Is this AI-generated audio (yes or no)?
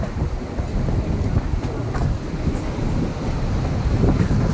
no